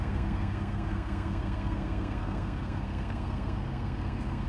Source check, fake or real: fake